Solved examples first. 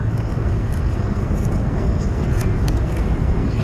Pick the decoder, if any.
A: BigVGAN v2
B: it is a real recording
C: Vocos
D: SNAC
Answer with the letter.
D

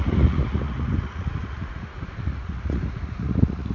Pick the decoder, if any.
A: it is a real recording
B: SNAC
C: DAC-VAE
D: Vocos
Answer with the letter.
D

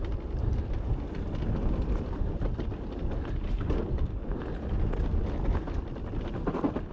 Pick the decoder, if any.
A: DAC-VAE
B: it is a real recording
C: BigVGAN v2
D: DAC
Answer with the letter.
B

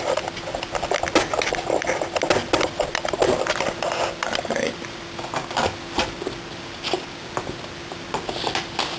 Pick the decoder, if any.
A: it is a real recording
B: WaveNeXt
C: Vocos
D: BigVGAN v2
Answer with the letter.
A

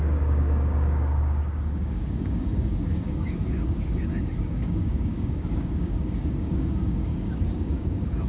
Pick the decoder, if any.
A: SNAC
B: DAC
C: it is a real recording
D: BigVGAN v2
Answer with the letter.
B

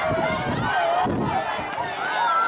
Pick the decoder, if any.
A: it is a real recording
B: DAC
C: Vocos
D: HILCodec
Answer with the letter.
A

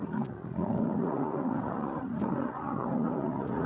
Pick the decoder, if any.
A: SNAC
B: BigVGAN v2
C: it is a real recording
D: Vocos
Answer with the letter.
D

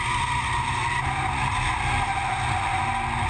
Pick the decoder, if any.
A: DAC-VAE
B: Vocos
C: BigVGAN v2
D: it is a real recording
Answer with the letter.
D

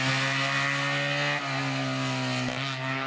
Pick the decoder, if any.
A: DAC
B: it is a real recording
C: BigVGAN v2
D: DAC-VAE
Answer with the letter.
B